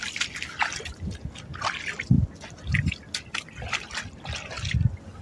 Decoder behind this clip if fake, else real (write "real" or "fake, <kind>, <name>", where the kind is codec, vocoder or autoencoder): real